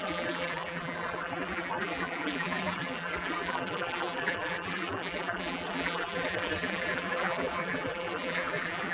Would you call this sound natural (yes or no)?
no